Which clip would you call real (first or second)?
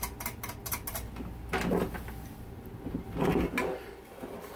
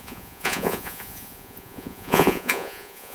first